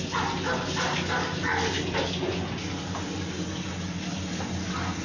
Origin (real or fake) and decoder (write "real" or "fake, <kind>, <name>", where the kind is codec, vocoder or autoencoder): real